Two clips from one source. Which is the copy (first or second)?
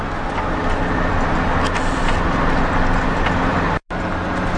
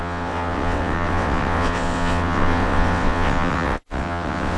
second